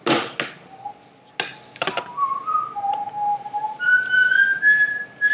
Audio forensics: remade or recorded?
recorded